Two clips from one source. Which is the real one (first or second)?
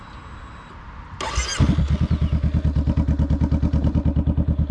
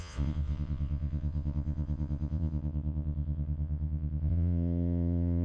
first